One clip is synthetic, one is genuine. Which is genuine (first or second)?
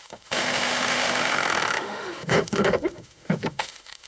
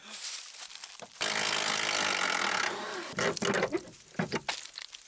second